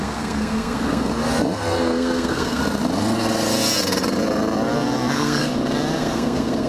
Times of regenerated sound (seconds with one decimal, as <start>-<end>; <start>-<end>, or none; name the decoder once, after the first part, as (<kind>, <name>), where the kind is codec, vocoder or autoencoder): 0.0-1.1 (codec, SNAC); 1.8-2.6; 5.1-5.5; 6.0-6.7